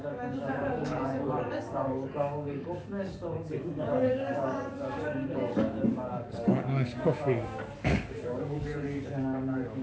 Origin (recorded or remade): remade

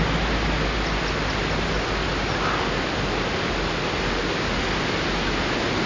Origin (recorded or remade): recorded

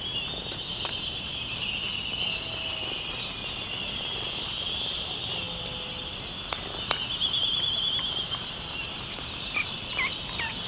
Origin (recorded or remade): recorded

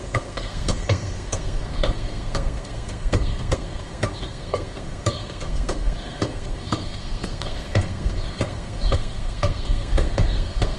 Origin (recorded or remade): remade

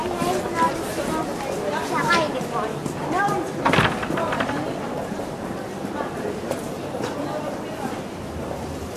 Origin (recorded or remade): recorded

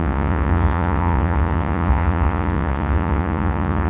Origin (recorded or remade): remade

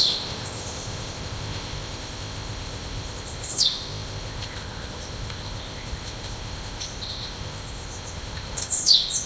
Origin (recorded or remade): remade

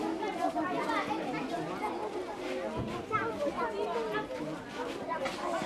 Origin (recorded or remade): recorded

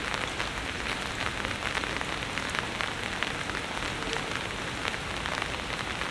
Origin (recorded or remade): recorded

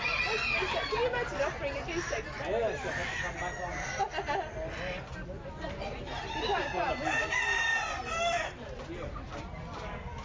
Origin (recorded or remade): recorded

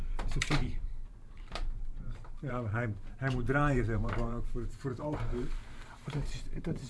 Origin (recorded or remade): remade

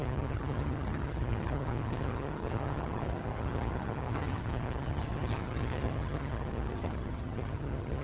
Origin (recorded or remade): remade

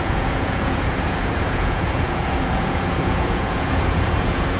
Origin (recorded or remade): remade